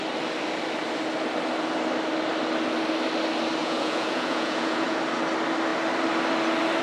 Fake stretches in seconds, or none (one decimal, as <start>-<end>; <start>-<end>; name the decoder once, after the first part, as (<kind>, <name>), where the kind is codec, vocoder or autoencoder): 3.6-5.0 (vocoder, Vocos)